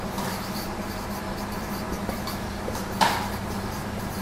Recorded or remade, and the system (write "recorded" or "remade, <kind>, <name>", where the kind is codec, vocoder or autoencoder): remade, vocoder, BigVGAN v2